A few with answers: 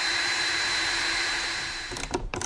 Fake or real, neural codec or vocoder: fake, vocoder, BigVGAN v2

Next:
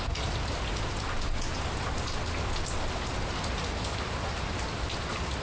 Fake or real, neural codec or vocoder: real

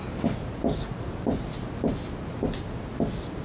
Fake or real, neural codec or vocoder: real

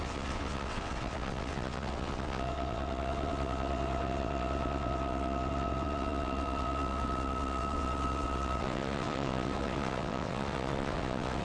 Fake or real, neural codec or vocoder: fake, vocoder, WaveNeXt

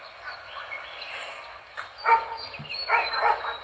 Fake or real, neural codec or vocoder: real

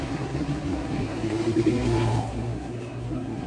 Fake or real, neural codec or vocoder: fake, codec, SNAC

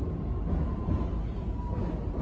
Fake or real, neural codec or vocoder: real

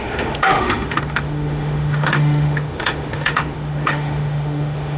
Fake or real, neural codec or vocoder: fake, autoencoder, DAC-VAE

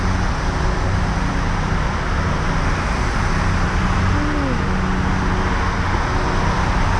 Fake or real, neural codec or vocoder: real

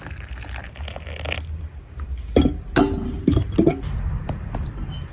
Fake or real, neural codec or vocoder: real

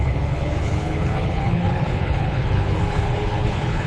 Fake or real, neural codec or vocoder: fake, codec, HILCodec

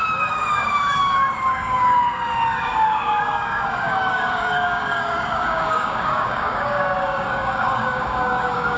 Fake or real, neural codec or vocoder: fake, codec, DAC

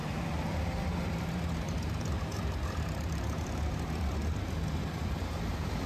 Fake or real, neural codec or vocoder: fake, vocoder, BigVGAN v2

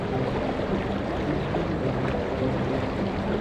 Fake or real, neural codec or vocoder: real